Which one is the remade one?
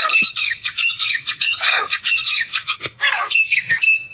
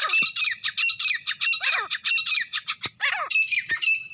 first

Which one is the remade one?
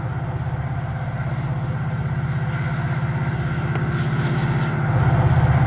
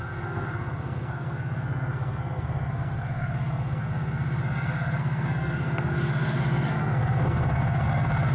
second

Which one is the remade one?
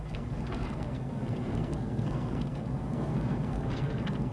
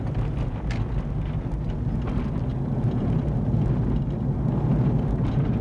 first